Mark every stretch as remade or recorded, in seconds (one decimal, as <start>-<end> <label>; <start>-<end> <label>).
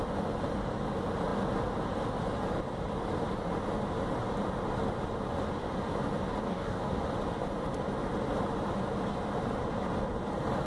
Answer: 0.0-6.4 recorded; 6.4-7.0 remade; 7.0-10.7 recorded